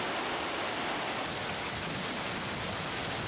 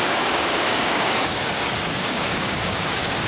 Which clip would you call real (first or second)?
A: first